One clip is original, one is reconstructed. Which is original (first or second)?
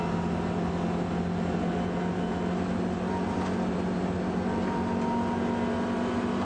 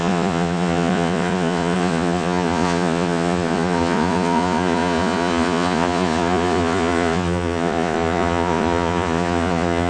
first